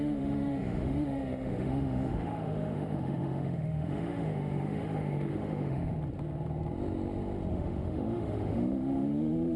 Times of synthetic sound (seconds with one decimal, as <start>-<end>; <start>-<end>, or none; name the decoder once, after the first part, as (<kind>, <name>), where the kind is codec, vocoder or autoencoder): 0.0-5.9 (autoencoder, DAC-VAE); 7.5-9.6